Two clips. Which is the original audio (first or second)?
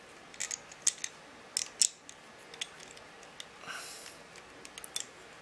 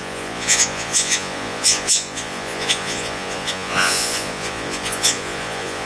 first